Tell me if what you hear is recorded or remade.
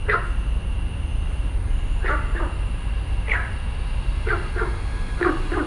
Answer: recorded